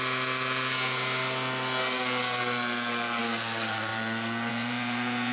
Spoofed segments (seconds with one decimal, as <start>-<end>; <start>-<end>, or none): 3.2-3.9; 4.5-5.3